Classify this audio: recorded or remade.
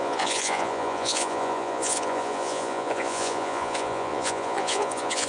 remade